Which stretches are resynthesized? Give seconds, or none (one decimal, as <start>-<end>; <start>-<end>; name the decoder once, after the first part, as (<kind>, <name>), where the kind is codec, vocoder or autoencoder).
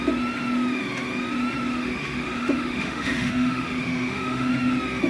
1.7-4.5 (autoencoder, DAC-VAE)